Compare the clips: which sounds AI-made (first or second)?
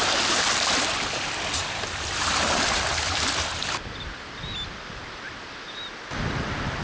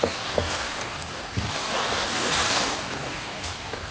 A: second